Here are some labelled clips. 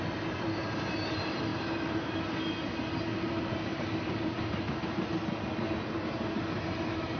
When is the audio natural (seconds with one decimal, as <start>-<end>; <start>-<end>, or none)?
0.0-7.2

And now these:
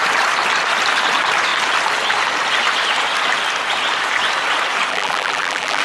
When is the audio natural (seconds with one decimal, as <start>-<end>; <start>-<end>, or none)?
0.0-4.9

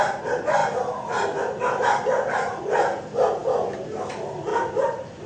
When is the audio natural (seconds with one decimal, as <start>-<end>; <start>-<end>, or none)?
0.0-3.4; 4.1-4.5

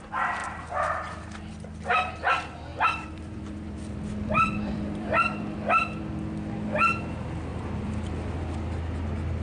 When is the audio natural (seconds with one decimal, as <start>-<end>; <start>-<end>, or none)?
0.0-2.7; 6.0-7.5; 8.4-9.4

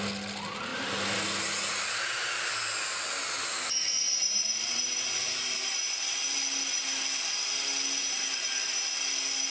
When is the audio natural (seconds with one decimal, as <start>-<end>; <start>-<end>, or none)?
0.0-0.7; 1.4-4.2; 5.7-9.5

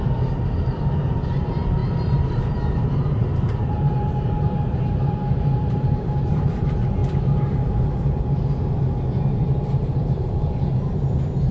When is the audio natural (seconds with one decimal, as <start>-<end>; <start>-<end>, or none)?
7.0-9.3

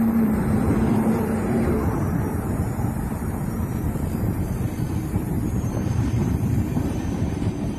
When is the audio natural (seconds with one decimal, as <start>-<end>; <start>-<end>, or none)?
3.6-5.1

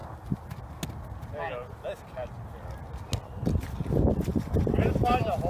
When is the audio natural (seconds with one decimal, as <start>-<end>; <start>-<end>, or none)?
0.0-4.3; 5.1-5.5